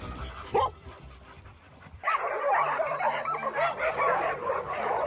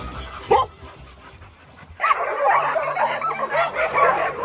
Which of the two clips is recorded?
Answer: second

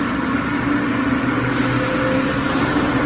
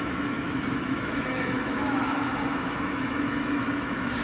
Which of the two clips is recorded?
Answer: first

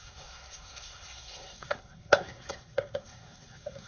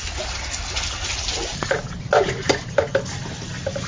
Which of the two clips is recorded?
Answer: second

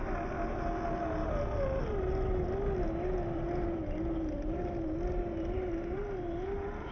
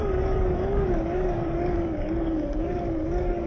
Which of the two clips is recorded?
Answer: first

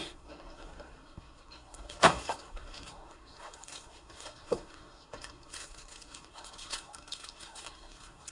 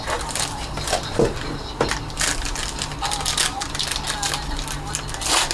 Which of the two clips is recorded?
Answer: second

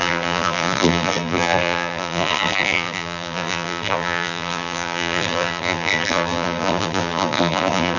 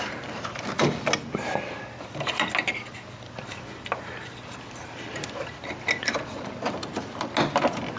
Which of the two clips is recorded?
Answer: second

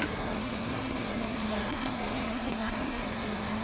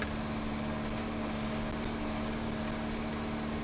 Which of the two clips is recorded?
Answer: second